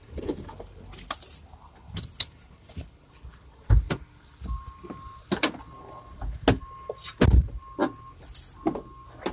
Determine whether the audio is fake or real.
real